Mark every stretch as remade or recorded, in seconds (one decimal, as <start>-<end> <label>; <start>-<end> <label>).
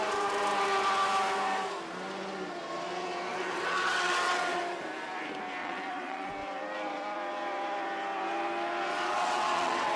0.0-3.3 recorded; 3.3-4.6 remade; 4.6-5.6 recorded; 5.6-6.3 remade; 6.3-8.9 recorded; 8.9-10.0 remade